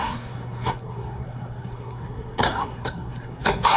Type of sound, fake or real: fake